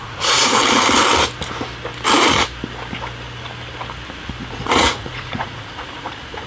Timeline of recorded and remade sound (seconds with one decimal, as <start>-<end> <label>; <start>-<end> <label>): 0.0-0.6 remade; 0.6-4.5 recorded; 4.5-6.5 remade